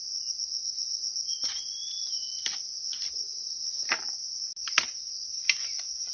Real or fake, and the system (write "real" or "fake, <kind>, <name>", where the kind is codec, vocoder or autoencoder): fake, vocoder, BigVGAN v2